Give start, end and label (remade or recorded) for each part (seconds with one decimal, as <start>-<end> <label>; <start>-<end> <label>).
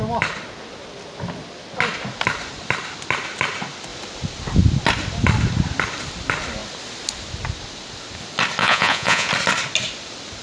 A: 0.0-8.6 recorded; 8.6-9.3 remade; 9.3-10.4 recorded